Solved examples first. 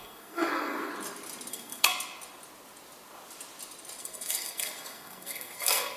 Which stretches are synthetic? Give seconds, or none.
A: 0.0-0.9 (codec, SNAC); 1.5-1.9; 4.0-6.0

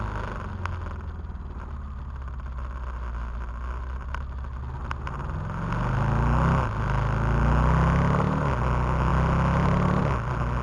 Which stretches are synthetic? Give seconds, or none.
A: none

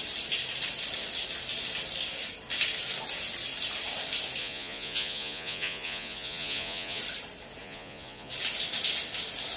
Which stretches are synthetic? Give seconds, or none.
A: 4.4-7.0 (vocoder, Vocos); 7.6-8.3

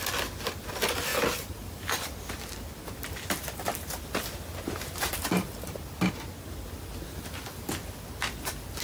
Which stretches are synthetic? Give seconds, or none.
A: none

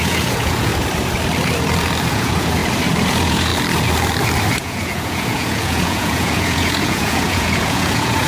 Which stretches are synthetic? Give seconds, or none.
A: 0.0-0.7 (vocoder, Vocos); 2.1-2.6; 3.1-3.5; 4.6-8.3

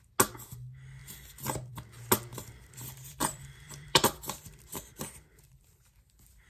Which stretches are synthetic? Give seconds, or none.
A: 2.3-4.8 (vocoder, BigVGAN v2)